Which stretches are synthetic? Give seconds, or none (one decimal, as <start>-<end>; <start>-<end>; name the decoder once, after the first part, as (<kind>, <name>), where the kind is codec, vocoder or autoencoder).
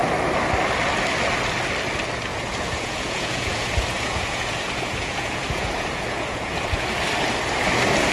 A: 2.3-6.9 (vocoder, Vocos)